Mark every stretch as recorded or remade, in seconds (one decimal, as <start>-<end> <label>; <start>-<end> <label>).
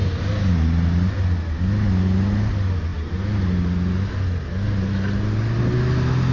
0.0-6.3 recorded